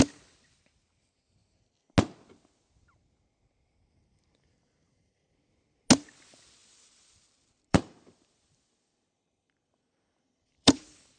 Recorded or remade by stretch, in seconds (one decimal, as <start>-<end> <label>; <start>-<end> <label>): 0.0-6.6 recorded; 6.6-11.2 remade